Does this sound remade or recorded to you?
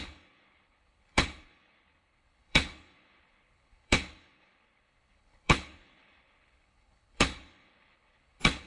remade